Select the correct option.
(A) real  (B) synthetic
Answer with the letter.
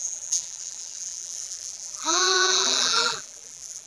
B